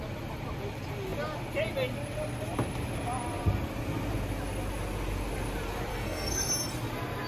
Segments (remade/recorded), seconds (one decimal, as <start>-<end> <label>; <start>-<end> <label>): 0.0-5.9 recorded; 5.9-6.5 remade; 6.5-7.3 recorded